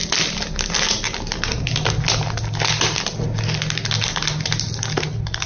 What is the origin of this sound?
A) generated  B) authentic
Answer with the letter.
B